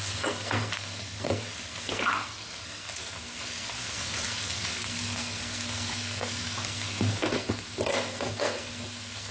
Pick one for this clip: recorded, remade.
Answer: remade